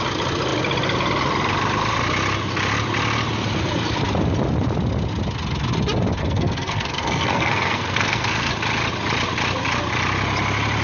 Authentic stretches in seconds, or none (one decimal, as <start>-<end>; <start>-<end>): 0.0-6.2; 8.5-10.8